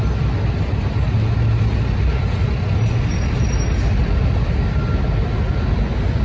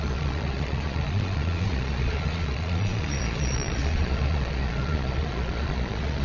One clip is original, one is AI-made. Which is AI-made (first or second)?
second